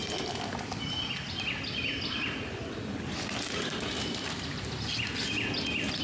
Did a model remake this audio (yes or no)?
no